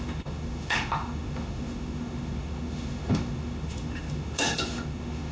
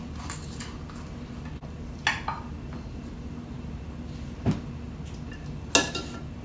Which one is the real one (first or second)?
second